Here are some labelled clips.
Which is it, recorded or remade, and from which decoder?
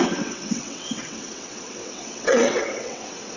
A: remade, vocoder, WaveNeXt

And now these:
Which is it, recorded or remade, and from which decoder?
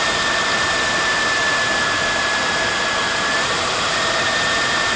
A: recorded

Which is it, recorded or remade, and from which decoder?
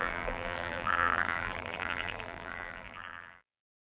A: remade, vocoder, BigVGAN v2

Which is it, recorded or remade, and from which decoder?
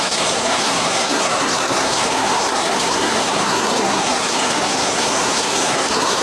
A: remade, codec, SNAC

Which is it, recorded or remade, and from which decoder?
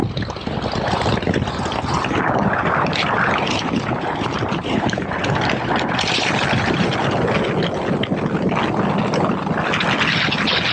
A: recorded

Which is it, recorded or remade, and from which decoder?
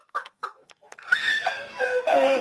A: remade, codec, SNAC